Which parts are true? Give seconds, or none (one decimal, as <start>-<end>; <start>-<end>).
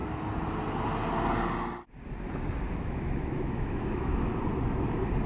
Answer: 0.0-2.7; 4.3-5.3